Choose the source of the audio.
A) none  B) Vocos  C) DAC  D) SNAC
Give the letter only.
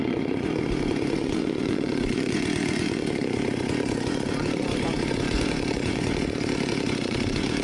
B